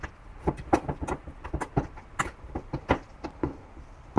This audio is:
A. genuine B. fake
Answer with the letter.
A